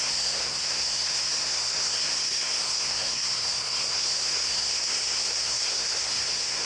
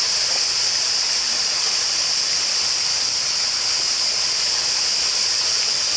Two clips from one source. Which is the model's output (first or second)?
first